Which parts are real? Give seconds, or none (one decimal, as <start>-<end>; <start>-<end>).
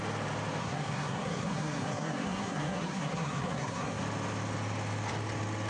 0.0-0.6; 4.0-5.7